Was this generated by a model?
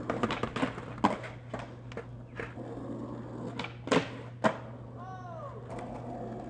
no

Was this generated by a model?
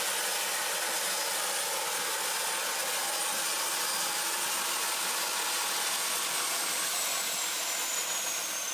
no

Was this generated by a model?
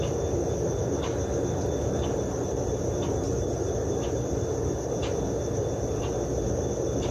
no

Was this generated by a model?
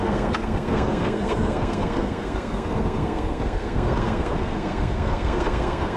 yes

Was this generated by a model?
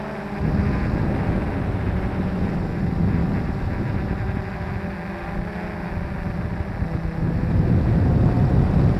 no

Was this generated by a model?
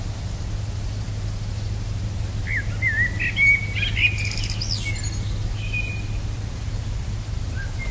no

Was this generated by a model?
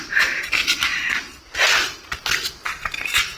no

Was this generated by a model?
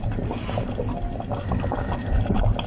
no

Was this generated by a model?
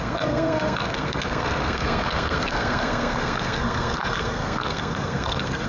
yes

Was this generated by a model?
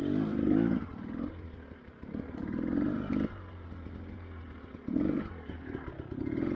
no